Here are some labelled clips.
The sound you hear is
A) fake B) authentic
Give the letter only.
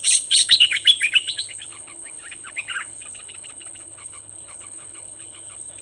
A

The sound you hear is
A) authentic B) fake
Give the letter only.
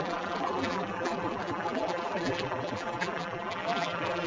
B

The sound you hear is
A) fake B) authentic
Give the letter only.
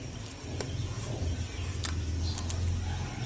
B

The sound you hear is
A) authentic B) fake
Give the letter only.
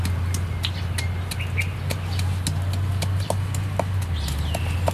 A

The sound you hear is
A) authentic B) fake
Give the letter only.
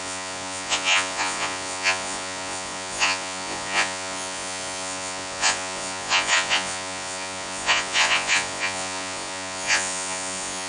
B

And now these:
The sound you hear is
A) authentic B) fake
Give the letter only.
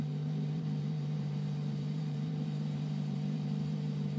B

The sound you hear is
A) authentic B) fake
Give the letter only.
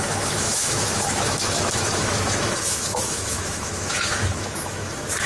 B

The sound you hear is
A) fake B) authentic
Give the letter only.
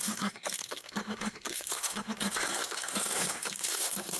A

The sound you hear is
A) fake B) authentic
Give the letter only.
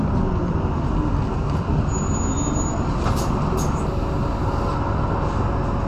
B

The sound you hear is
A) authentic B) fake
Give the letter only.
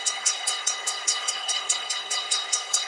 B